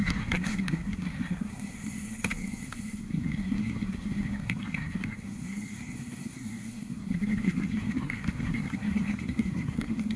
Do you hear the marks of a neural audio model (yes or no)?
yes